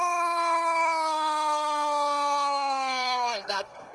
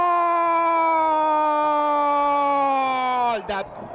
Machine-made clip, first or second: first